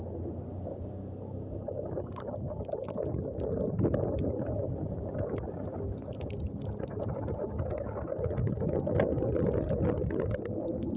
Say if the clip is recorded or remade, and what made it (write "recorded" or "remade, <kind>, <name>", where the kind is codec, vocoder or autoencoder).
recorded